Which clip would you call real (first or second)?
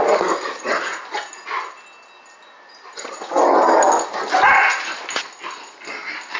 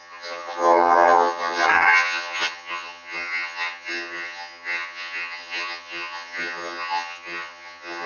first